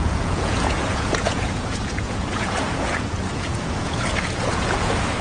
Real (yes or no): no